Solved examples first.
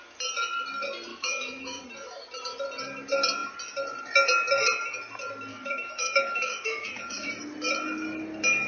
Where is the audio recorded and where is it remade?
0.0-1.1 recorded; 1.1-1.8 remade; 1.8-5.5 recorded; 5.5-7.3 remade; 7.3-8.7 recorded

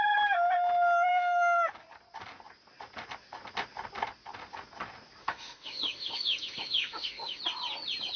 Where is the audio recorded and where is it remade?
0.0-1.1 recorded; 1.1-1.7 remade; 1.7-5.2 recorded; 5.2-7.4 remade; 7.4-8.2 recorded